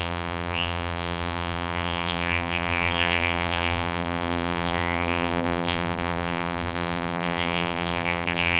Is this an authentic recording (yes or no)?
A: no